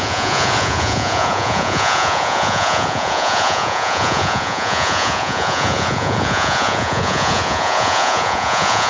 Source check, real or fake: fake